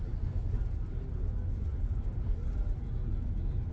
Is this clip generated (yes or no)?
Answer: no